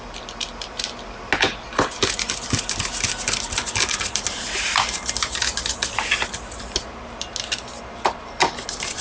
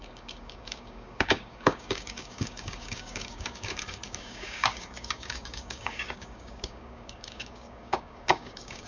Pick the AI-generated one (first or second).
second